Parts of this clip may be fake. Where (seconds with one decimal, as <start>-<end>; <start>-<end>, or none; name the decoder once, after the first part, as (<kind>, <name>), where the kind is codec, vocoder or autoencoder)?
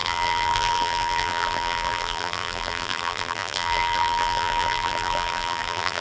0.0-6.0 (vocoder, BigVGAN v2)